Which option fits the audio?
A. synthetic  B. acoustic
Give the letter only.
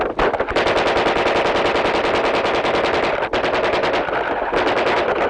B